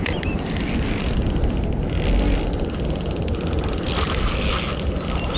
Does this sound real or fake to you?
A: real